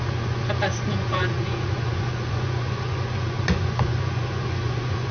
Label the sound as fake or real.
fake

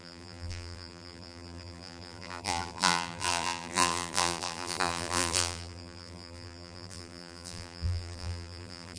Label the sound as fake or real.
fake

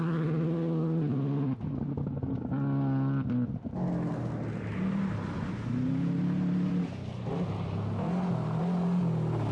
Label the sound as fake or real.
real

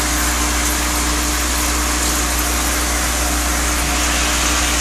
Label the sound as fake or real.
real